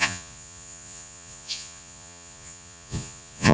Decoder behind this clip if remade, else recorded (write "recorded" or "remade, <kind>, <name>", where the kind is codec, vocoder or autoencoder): remade, vocoder, Vocos